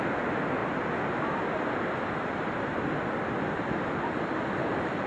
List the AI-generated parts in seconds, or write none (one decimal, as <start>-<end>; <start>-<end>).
none